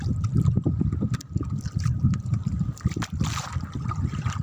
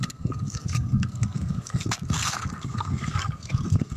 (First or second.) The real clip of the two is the first